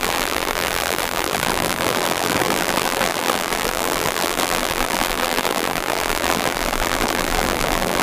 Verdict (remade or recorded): remade